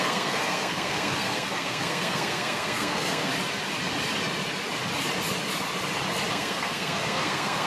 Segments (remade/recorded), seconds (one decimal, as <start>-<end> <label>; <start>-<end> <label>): 0.0-3.3 remade; 3.3-6.3 recorded; 6.3-7.7 remade